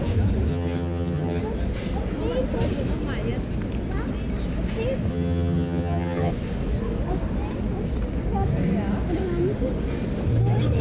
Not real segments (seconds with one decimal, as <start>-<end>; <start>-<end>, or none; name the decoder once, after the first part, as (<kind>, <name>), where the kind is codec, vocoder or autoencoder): 0.5-1.4 (vocoder, HiFi-GAN); 5.1-6.3